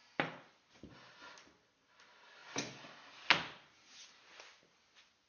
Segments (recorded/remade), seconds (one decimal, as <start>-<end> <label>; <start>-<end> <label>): 0.0-5.3 recorded